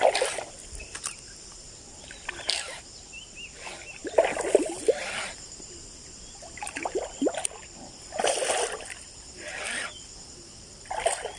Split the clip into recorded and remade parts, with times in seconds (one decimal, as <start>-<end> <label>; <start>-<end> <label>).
0.0-0.8 recorded; 0.8-2.2 remade; 2.2-4.0 recorded; 4.0-6.8 remade; 6.8-11.4 recorded